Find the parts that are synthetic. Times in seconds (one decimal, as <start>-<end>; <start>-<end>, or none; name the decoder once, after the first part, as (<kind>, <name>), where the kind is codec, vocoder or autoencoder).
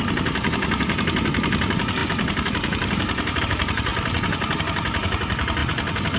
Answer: 0.0-3.9 (vocoder, BigVGAN v2); 4.6-5.6